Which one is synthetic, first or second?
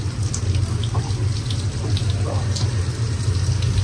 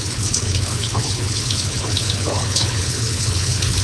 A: second